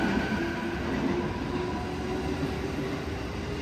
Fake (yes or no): no